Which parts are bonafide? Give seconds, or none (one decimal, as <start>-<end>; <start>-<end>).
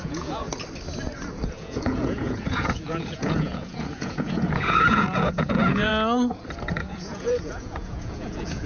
0.5-1.5; 5.9-6.7